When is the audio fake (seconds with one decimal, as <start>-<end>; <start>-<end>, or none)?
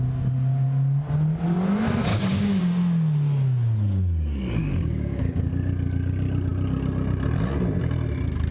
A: 2.1-2.6; 4.6-5.5